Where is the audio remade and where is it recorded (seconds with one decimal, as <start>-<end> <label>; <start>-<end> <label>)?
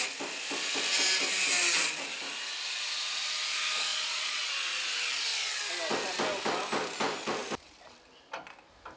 0.0-3.9 recorded; 3.9-4.5 remade; 4.5-9.0 recorded